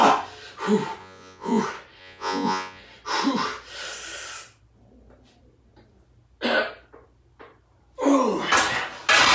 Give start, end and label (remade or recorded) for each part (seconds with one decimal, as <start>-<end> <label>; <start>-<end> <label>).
0.0-1.0 recorded; 1.0-1.6 remade; 1.6-2.0 recorded; 2.0-2.8 remade; 2.8-9.3 recorded